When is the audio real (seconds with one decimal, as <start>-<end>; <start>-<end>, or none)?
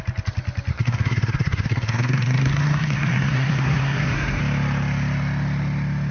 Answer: 0.0-0.7; 4.4-6.1